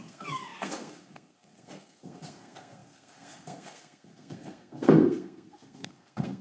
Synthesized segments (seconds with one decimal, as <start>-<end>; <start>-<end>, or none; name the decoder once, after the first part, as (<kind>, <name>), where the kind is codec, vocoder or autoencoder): 0.0-6.4 (codec, SNAC)